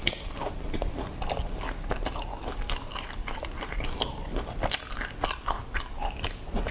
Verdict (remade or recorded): recorded